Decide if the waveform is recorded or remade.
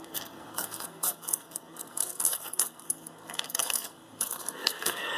remade